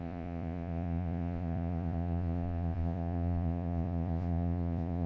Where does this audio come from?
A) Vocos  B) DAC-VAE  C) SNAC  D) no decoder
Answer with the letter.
A